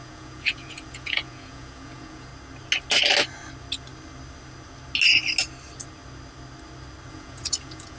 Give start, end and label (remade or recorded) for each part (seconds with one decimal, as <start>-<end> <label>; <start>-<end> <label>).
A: 0.0-2.3 remade; 2.3-7.1 recorded; 7.1-8.0 remade